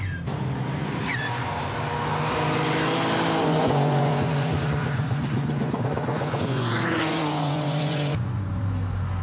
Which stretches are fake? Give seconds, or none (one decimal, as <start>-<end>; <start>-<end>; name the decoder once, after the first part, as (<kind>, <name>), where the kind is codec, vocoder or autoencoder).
0.8-1.5 (vocoder, Vocos); 3.4-8.6